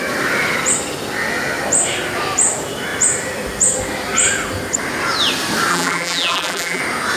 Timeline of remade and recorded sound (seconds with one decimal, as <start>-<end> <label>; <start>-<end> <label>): 0.0-5.7 recorded; 5.7-6.8 remade; 6.8-7.2 recorded

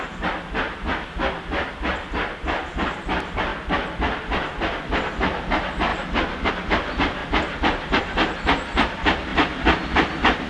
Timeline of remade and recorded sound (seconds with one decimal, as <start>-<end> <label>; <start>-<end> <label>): 0.0-3.5 recorded; 3.5-5.1 remade; 5.1-9.3 recorded; 9.3-10.5 remade

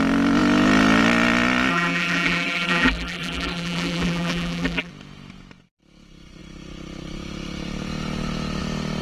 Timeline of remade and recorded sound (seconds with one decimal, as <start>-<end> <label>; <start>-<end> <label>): 0.0-1.7 recorded; 1.7-4.9 remade; 4.9-9.0 recorded

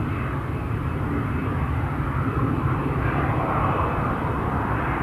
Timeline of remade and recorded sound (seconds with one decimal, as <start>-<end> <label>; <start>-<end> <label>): 0.0-1.4 recorded; 1.4-4.4 remade; 4.4-5.0 recorded

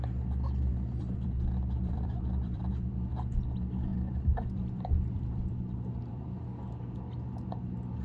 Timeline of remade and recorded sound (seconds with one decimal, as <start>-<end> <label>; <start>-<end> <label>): 0.0-0.7 recorded; 0.7-2.7 remade; 2.7-3.9 recorded; 3.9-6.4 remade; 6.4-8.0 recorded

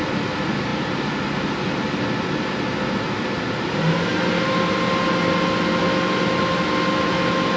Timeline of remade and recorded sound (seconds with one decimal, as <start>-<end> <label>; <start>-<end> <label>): 0.0-7.6 recorded

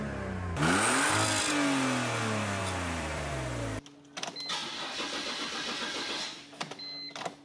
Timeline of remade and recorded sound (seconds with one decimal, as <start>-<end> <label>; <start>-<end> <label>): 0.0-2.6 recorded; 2.6-3.3 remade; 3.3-7.4 recorded

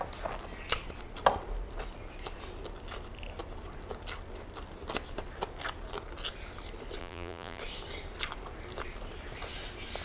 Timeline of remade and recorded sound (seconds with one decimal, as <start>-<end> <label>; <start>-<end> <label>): 0.0-7.0 recorded; 7.0-7.6 remade; 7.6-10.0 recorded